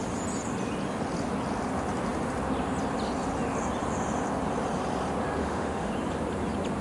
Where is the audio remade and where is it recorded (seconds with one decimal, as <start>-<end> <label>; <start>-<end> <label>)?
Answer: 0.0-5.4 recorded; 5.4-5.9 remade; 5.9-6.8 recorded